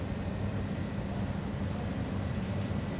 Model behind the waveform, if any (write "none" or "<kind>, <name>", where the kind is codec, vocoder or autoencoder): vocoder, BigVGAN v2